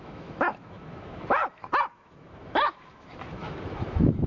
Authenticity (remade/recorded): remade